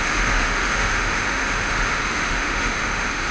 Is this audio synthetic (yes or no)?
yes